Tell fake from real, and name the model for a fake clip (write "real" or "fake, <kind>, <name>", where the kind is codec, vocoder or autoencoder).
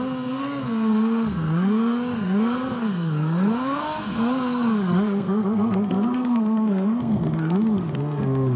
fake, codec, SNAC